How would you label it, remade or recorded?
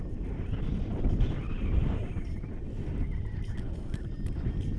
recorded